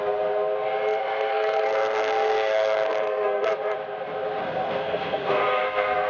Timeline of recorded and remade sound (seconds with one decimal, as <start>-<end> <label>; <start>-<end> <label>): 0.0-1.0 recorded; 1.0-3.5 remade; 3.5-4.4 recorded; 4.4-6.1 remade